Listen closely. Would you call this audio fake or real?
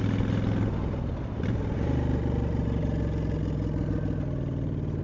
real